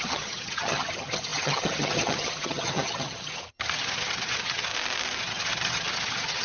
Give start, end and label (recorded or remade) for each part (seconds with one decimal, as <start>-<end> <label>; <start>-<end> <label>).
0.0-4.7 remade; 4.7-5.2 recorded; 5.2-6.4 remade